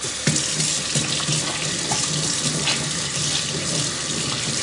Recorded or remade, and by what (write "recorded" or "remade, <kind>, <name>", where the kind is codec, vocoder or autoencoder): recorded